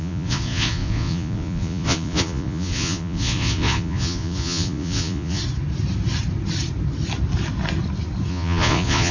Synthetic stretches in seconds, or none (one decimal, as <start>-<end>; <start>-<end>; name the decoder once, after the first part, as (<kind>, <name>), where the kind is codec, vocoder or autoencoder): 0.0-5.4 (vocoder, Vocos); 8.3-9.1